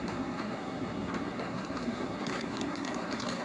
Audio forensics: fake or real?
fake